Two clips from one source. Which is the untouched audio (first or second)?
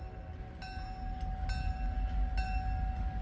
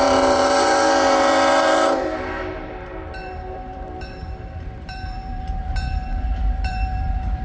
first